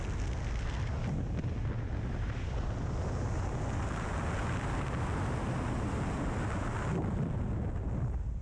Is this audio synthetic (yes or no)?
no